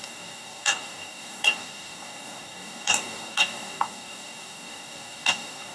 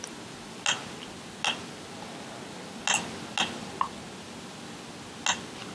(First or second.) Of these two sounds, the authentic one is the second